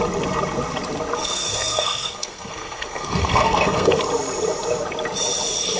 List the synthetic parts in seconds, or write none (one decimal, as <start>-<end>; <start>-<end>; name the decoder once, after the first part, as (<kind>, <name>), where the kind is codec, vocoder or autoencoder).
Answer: 1.2-4.0 (codec, SNAC)